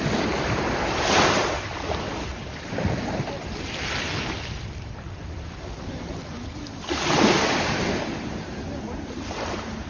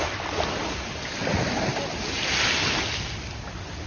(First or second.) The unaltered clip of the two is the second